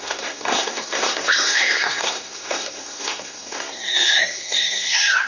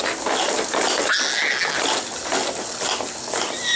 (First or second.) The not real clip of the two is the first